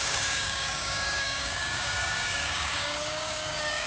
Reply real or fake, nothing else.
fake